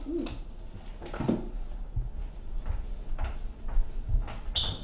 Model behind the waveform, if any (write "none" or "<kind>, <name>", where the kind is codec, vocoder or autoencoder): none